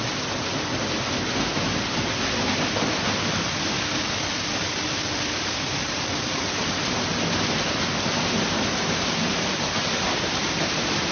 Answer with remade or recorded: recorded